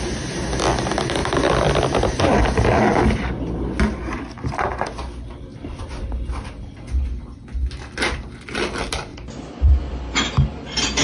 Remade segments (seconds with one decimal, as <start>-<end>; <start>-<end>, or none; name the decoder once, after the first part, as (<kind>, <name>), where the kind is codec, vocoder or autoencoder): 5.5-6.3 (vocoder, BigVGAN v2); 9.1-10.0